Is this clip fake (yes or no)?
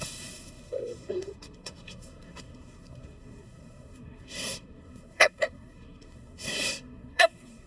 yes